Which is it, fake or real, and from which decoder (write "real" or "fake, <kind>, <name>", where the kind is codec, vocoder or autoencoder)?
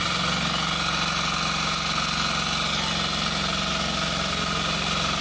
real